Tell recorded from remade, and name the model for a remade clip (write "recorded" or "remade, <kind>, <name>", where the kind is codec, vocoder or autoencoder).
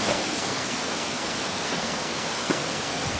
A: remade, codec, SNAC